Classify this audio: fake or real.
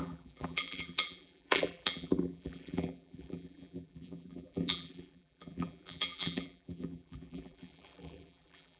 fake